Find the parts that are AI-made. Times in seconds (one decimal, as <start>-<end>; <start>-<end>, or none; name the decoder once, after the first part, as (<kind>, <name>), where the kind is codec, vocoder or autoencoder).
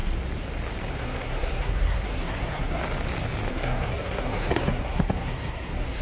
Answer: 0.9-2.8 (codec, SNAC); 3.5-6.0